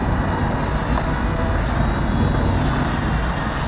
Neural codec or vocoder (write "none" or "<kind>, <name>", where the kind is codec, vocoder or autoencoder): none